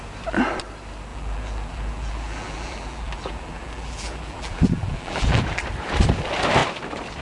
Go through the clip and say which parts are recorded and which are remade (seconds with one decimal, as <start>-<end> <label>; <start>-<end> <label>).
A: 0.0-1.1 recorded; 1.1-5.4 remade; 5.4-7.2 recorded